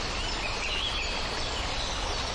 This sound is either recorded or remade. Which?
recorded